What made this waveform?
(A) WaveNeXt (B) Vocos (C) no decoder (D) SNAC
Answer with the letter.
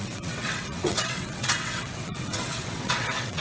A